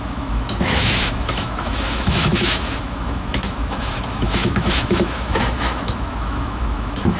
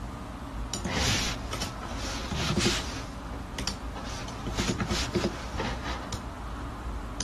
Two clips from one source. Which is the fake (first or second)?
first